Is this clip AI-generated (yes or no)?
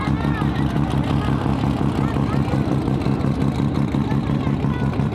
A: no